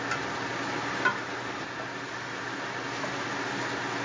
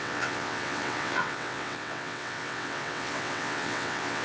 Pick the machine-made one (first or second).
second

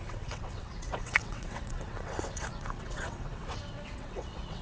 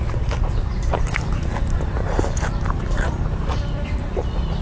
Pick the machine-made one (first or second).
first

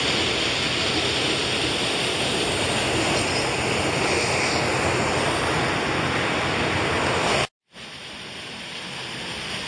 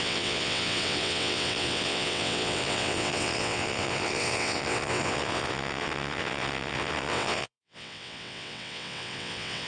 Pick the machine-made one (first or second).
second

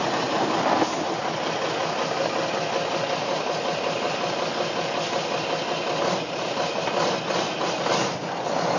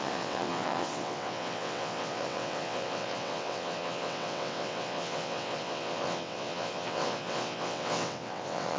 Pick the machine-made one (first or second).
second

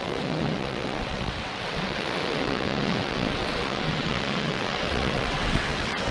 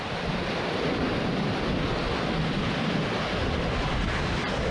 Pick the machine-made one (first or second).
first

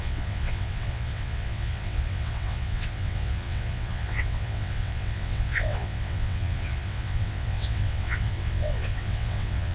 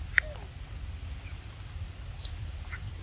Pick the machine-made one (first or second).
first